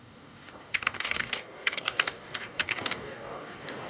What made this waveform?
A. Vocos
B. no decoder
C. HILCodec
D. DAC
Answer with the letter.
D